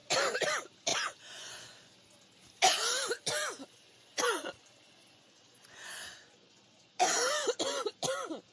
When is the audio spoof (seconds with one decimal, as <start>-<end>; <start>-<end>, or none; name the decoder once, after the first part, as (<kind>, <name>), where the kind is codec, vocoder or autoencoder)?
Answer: 0.9-1.9 (vocoder, Vocos); 3.6-6.9